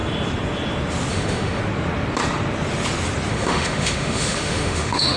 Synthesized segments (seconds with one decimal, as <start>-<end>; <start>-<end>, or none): 1.1-1.6; 3.3-5.2

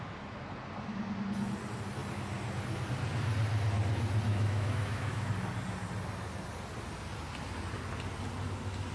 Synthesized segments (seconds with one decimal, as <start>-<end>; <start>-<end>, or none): 4.3-5.3

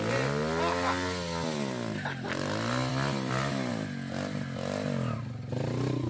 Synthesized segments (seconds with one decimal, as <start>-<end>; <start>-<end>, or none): none

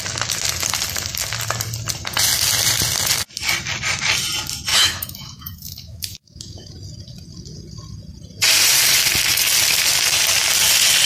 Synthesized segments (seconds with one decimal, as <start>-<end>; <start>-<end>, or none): 4.7-6.7

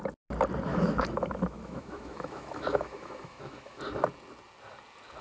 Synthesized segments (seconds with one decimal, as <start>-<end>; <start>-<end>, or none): 0.7-3.8